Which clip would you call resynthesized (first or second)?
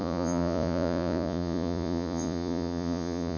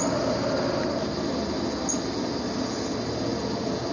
first